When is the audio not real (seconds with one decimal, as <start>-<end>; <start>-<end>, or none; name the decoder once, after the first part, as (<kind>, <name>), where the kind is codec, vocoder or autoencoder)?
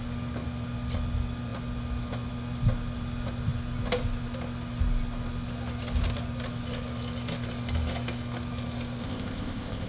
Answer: 9.0-9.9 (codec, ZipCodec)